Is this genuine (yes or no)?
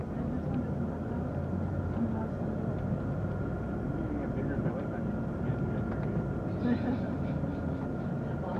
no